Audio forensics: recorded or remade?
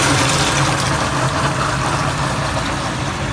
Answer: recorded